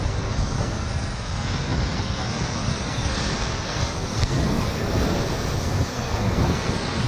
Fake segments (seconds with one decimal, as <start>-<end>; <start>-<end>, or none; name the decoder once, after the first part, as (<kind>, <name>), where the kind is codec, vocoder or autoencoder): 0.0-7.1 (codec, SNAC)